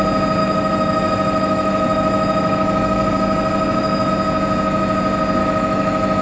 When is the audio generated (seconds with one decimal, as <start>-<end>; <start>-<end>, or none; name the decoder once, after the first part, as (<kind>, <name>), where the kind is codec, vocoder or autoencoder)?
0.4-4.1 (autoencoder, DAC-VAE); 5.4-6.2